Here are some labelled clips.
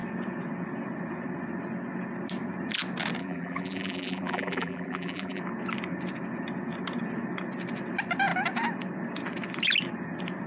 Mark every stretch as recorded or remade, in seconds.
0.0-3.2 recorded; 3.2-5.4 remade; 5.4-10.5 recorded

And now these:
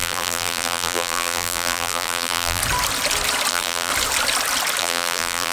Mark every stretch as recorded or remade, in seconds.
0.0-2.6 remade; 2.6-3.5 recorded; 3.5-3.9 remade; 3.9-4.8 recorded; 4.8-5.5 remade

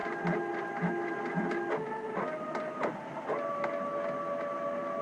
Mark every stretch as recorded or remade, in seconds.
0.0-5.0 recorded

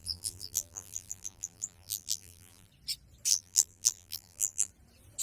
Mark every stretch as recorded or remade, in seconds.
0.0-2.7 remade; 2.7-3.3 recorded; 3.3-4.7 remade; 4.7-5.2 recorded

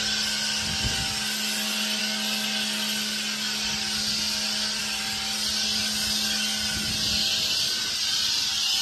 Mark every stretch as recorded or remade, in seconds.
0.0-8.8 recorded

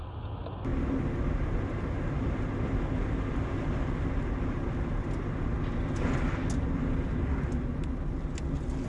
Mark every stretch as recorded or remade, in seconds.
0.0-8.9 recorded

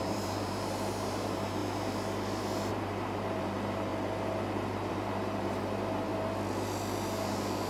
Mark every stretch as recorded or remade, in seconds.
0.0-1.6 remade; 1.6-2.7 recorded; 2.7-3.9 remade; 3.9-4.9 recorded; 4.9-6.1 remade; 6.1-7.7 recorded